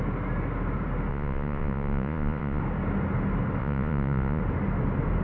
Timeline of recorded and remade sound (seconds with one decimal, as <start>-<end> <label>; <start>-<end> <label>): 0.0-1.1 recorded; 1.1-2.6 remade; 2.6-3.6 recorded; 3.6-4.4 remade; 4.4-5.2 recorded